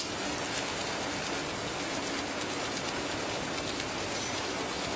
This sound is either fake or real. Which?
real